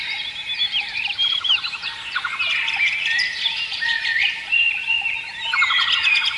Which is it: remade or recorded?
remade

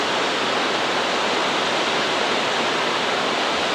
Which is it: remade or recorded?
recorded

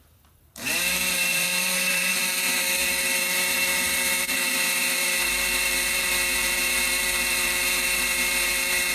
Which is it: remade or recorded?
remade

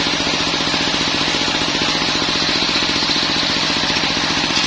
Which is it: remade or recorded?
remade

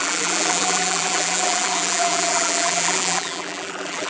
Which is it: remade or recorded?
remade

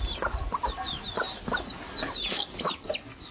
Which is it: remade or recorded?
recorded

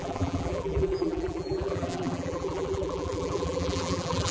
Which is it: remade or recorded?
remade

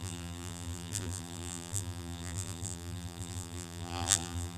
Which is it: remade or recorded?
remade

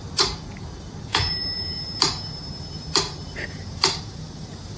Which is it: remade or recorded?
remade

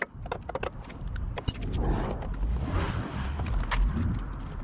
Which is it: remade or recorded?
recorded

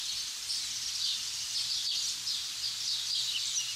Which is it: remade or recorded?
recorded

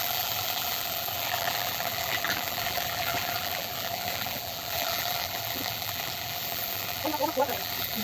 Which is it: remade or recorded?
remade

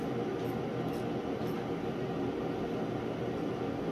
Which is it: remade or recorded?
recorded